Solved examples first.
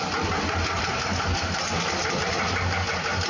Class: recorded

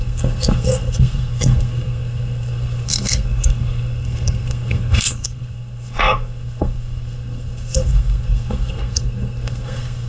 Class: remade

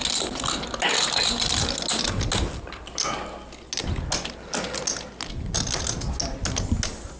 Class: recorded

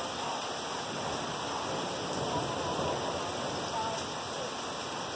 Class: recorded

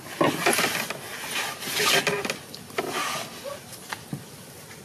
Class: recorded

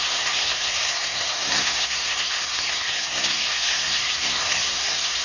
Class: remade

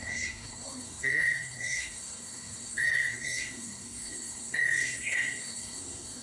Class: remade